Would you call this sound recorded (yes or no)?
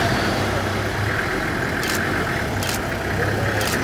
yes